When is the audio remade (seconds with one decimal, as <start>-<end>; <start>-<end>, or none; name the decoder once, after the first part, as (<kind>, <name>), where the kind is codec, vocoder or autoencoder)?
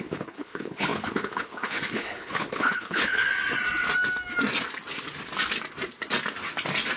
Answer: 0.0-3.3 (codec, HILCodec)